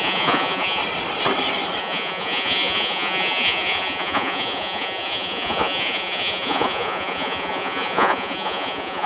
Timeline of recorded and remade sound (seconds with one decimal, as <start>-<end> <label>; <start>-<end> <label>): 0.0-0.8 remade; 0.8-1.8 recorded; 1.8-9.1 remade